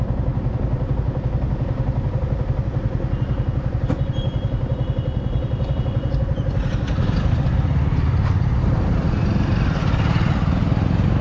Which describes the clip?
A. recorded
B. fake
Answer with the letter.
A